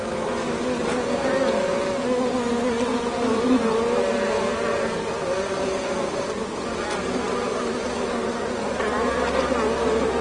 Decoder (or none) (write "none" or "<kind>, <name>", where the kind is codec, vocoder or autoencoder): none